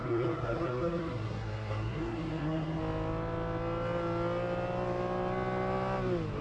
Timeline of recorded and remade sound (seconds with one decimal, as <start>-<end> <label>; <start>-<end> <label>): 0.0-2.8 remade; 2.8-6.4 recorded